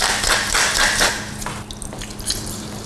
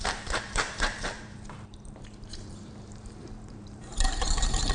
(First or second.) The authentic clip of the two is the first